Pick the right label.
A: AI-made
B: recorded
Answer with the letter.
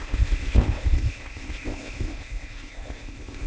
A